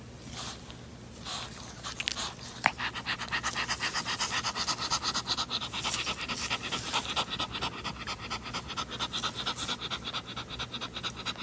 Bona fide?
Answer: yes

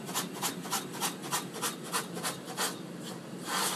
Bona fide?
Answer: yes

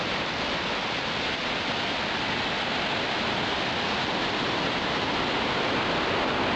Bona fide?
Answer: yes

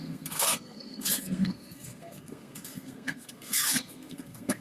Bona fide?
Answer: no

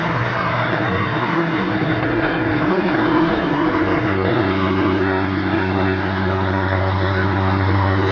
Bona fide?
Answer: no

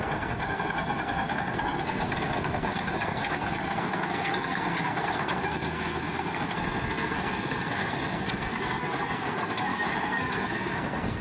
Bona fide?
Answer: no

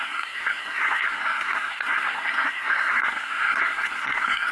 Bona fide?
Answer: no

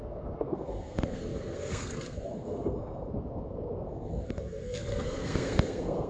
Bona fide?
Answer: no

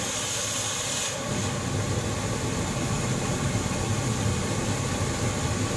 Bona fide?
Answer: yes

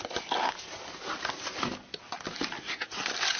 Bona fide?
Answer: yes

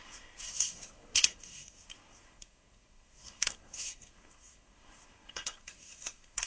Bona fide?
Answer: no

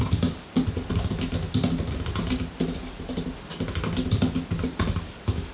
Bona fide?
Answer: yes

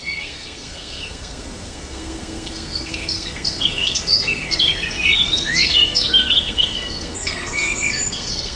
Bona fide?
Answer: no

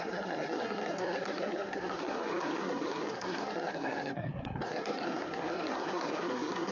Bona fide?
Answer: no